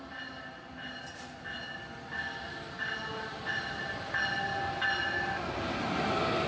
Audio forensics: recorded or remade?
recorded